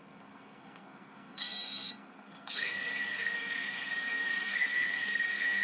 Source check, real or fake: fake